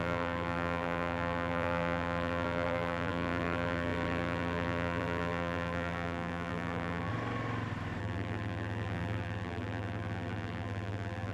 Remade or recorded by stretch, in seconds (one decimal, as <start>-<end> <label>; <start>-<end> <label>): 0.0-7.1 remade; 7.1-8.0 recorded; 8.0-11.3 remade